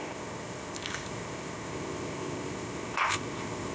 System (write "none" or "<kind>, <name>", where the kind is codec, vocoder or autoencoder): codec, ZipCodec